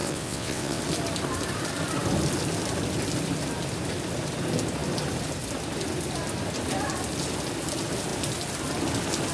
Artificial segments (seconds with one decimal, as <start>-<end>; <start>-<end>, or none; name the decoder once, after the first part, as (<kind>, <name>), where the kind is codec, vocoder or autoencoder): 0.0-0.8 (vocoder, WaveNeXt)